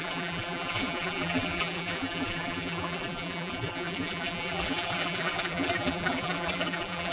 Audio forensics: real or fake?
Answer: fake